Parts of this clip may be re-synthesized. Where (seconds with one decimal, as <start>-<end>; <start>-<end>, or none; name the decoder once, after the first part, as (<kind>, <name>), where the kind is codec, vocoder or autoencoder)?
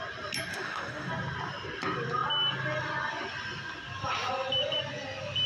0.5-1.1 (autoencoder, DAC-VAE)